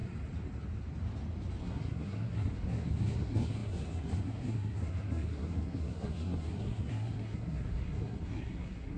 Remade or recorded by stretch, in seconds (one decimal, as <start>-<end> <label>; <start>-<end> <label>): 0.0-1.6 recorded; 1.6-9.0 remade